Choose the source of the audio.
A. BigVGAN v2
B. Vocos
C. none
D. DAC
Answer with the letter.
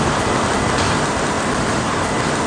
C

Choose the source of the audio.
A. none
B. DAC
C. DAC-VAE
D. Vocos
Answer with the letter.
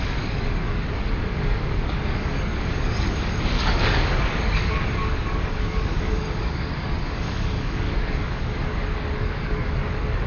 B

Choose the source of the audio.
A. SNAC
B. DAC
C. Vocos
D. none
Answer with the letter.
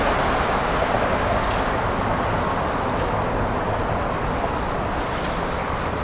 D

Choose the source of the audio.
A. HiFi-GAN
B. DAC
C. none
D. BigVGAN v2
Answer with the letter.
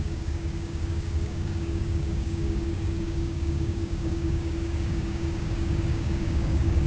B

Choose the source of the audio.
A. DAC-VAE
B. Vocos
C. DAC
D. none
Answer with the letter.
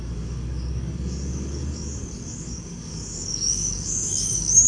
C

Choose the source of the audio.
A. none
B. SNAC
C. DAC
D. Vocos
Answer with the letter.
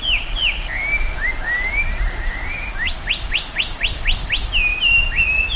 A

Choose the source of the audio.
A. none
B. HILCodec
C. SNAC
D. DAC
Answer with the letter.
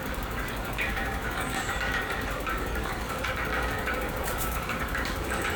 D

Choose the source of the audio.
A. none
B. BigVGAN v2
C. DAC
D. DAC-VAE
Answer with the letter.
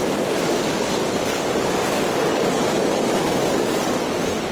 C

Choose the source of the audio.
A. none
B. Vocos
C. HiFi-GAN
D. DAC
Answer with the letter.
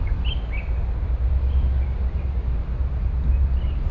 A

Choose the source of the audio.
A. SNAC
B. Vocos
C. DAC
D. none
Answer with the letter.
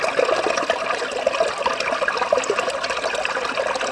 D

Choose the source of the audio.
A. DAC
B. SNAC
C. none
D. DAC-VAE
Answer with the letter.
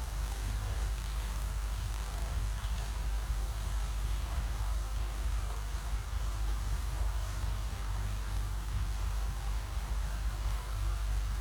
A